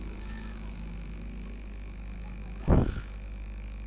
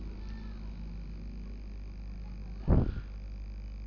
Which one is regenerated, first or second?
first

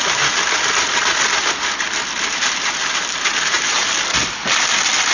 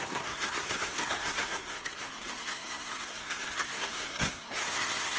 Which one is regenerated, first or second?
second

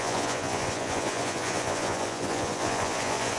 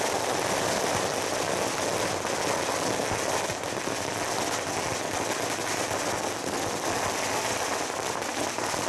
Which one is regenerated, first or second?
first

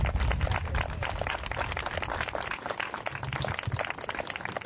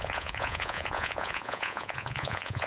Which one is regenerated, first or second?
second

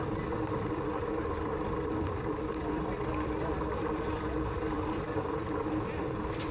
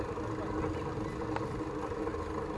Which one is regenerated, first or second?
first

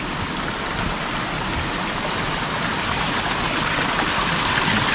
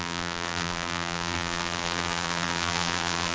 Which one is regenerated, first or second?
second